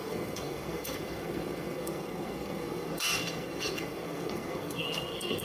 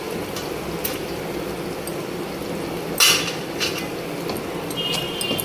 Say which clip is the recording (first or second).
second